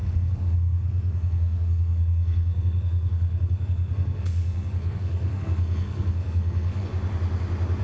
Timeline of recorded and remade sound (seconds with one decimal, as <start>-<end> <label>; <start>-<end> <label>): 0.0-6.9 remade; 6.9-7.8 recorded